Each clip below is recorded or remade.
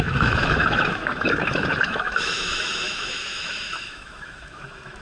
remade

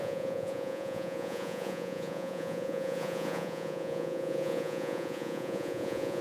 remade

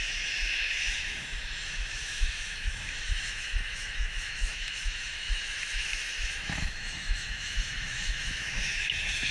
remade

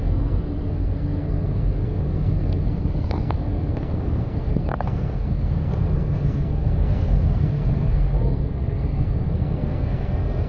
remade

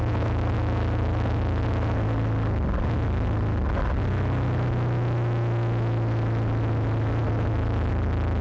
recorded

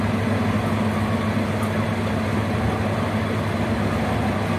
recorded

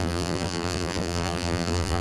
remade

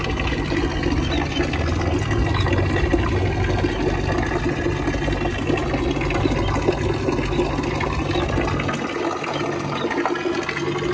recorded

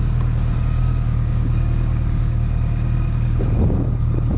remade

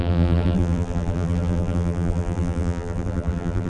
remade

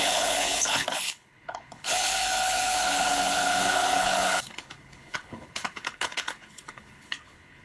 remade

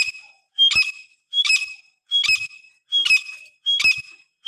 recorded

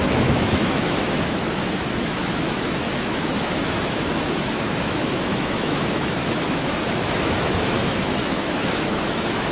remade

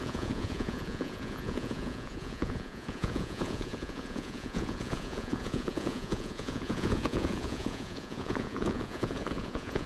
remade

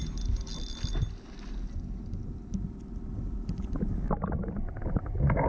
recorded